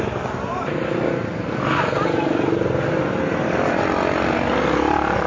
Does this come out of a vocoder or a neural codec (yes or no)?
no